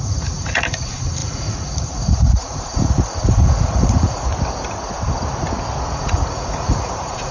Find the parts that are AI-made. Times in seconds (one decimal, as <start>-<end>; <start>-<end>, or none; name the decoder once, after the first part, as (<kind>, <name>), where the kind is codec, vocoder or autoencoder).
0.0-4.3 (vocoder, Vocos); 5.8-7.3